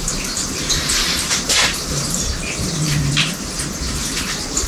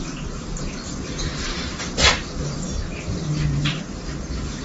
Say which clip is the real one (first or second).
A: second